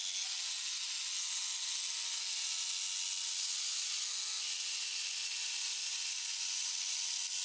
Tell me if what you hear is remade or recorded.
recorded